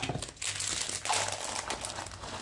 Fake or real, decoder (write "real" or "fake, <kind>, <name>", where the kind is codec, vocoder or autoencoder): real